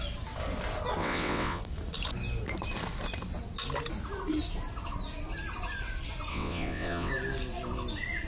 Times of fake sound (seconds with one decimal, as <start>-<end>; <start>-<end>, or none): 1.0-1.6; 6.3-7.1